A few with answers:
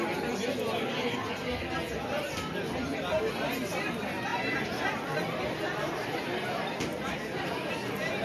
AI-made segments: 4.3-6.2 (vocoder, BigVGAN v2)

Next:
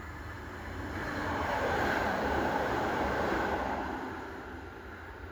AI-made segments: 1.0-1.6 (vocoder, BigVGAN v2); 2.0-3.4

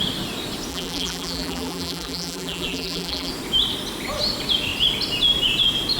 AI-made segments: 0.7-3.3 (vocoder, BigVGAN v2)

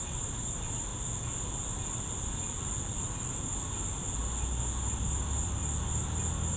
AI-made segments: 0.0-0.9 (vocoder, BigVGAN v2); 4.9-5.6